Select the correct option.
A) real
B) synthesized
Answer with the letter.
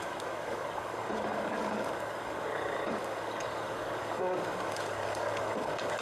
B